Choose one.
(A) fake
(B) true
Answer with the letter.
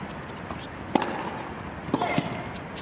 B